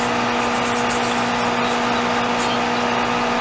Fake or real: real